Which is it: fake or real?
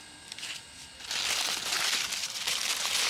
real